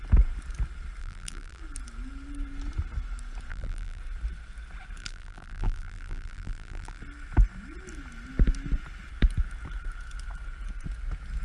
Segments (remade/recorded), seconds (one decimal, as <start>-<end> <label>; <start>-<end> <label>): 0.0-1.0 recorded; 1.0-1.6 remade; 1.6-3.5 recorded; 3.5-4.0 remade; 4.0-5.0 recorded; 5.0-7.0 remade; 7.0-11.4 recorded